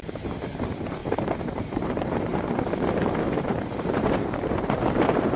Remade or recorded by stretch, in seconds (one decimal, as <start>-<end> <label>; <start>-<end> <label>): 0.0-5.4 remade